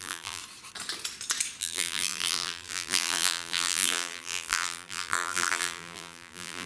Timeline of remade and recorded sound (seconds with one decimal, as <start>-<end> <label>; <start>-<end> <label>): 0.0-0.4 remade; 0.4-1.6 recorded; 1.6-6.7 remade